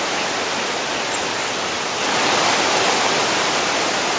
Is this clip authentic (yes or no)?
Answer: yes